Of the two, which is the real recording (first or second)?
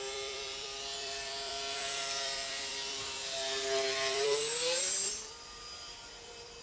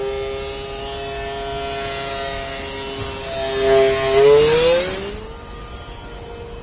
second